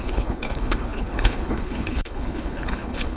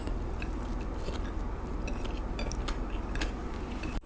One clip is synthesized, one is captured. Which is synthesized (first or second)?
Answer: first